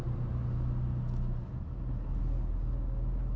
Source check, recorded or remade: recorded